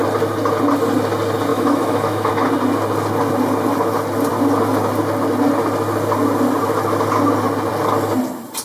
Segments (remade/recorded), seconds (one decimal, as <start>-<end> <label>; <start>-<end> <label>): 0.0-1.5 recorded; 1.5-2.3 remade; 2.3-8.6 recorded